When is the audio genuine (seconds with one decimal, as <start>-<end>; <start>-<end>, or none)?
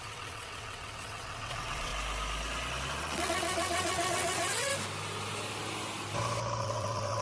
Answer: 1.9-3.0; 4.7-6.6